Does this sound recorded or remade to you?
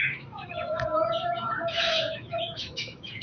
remade